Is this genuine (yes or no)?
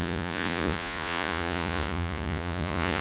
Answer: no